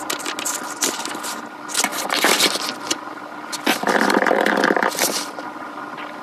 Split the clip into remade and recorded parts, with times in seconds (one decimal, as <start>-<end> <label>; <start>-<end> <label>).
0.0-1.9 recorded; 1.9-3.2 remade; 3.2-3.7 recorded; 3.7-5.4 remade; 5.4-6.2 recorded